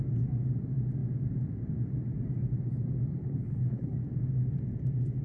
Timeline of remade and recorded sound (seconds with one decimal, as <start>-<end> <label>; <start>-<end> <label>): 0.0-3.2 recorded; 3.2-4.0 remade; 4.0-5.2 recorded